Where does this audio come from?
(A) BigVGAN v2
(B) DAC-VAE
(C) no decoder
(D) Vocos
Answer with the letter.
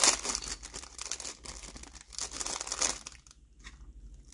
C